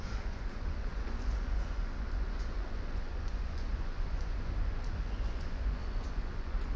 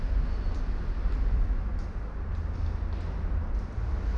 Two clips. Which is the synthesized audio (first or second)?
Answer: first